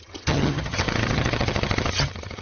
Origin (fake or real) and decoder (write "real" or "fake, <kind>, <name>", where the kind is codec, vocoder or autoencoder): fake, vocoder, HiFi-GAN